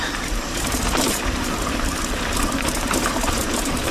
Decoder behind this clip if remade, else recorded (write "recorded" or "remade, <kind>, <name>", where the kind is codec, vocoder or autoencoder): remade, vocoder, BigVGAN v2